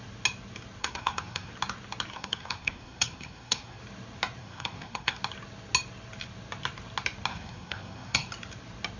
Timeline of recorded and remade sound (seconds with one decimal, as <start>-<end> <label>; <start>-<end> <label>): 0.0-0.8 recorded; 0.8-1.5 remade; 1.5-2.1 recorded; 2.1-3.8 remade; 3.8-4.4 recorded; 4.4-5.2 remade; 5.2-7.3 recorded; 7.3-8.3 remade; 8.3-9.0 recorded

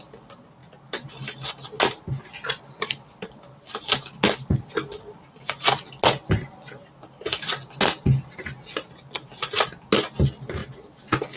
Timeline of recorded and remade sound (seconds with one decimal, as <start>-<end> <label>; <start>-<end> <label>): 0.0-11.4 recorded

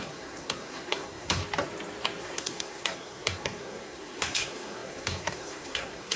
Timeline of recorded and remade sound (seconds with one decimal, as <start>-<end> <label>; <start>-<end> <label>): 0.0-1.4 remade; 1.4-2.2 recorded; 2.2-6.2 remade

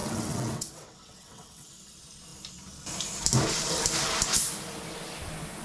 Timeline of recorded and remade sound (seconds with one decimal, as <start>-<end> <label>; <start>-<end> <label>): 0.0-1.7 remade; 1.7-5.6 recorded

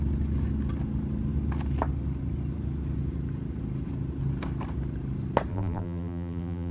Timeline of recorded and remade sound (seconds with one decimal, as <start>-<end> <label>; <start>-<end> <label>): 0.0-5.5 recorded; 5.5-6.7 remade